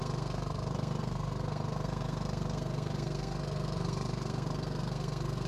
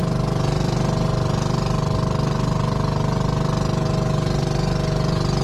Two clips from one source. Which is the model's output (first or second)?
first